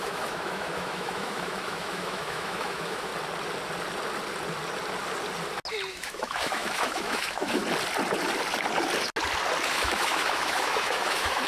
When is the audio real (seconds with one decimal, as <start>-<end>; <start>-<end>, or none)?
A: 3.1-5.9; 7.6-9.7